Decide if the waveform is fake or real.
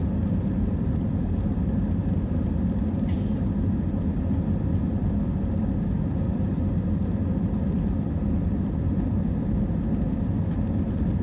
real